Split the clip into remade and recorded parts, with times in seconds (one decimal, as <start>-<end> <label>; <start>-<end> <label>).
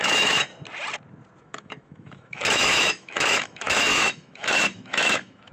0.0-0.5 remade; 0.5-1.4 recorded; 1.4-5.5 remade